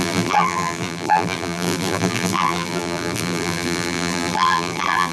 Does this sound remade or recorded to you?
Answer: remade